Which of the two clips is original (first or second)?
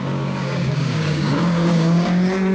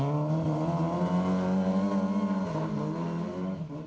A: second